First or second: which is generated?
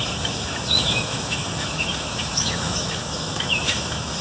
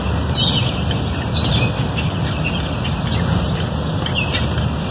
first